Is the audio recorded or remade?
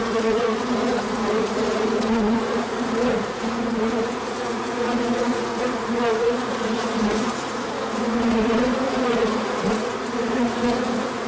remade